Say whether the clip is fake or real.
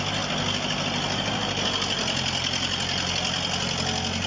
real